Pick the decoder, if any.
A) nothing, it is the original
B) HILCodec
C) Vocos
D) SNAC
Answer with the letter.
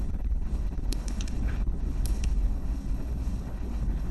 B